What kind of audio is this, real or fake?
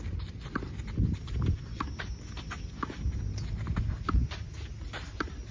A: real